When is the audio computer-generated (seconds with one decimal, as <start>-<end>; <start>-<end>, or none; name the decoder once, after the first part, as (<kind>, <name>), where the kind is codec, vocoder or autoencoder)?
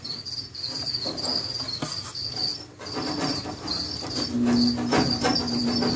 none